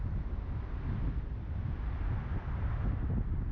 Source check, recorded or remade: recorded